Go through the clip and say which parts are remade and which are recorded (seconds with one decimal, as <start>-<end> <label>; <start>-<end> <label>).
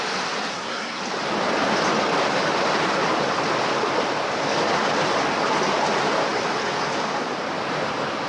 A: 0.0-0.5 recorded; 0.5-1.0 remade; 1.0-8.3 recorded